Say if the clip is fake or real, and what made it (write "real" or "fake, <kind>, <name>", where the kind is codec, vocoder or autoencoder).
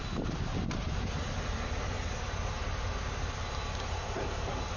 real